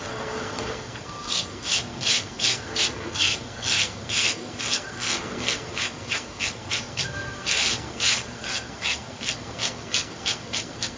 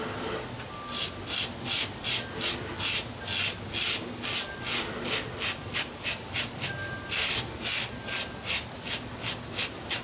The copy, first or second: first